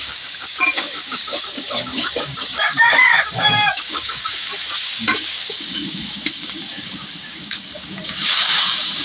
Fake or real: fake